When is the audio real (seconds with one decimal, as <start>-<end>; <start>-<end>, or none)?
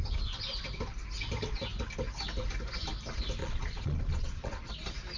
0.0-3.4; 4.7-5.2